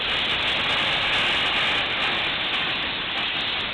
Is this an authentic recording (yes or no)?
yes